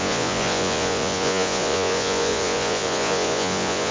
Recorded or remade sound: remade